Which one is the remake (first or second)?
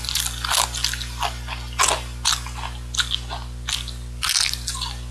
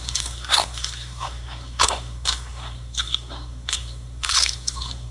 second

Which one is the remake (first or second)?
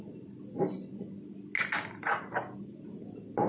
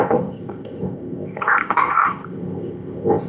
second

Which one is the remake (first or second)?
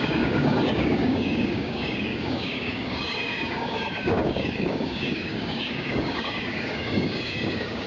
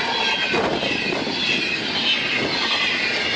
first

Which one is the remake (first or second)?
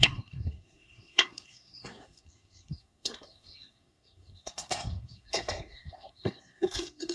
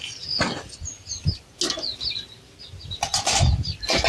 first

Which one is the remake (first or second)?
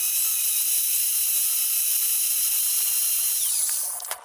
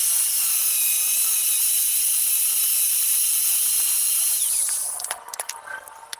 first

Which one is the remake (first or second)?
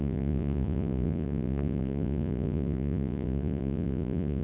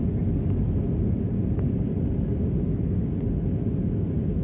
first